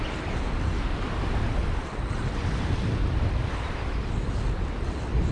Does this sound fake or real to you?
real